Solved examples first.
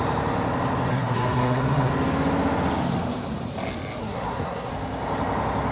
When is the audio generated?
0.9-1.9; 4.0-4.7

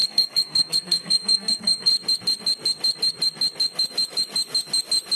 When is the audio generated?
0.0-1.9

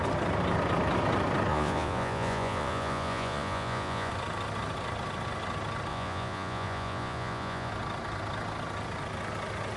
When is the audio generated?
1.5-4.1; 5.9-7.7

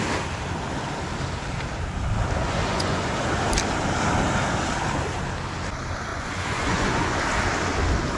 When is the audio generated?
2.4-3.1; 6.1-7.2